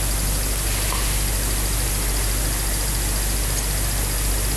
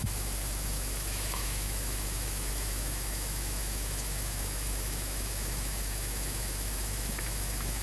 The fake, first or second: second